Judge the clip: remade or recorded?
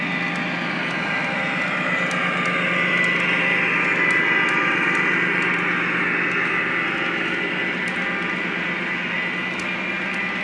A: recorded